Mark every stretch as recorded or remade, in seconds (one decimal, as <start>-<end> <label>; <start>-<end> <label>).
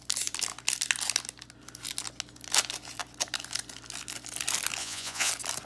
0.0-4.8 recorded; 4.8-5.3 remade; 5.3-5.7 recorded